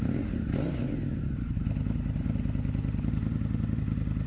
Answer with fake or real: real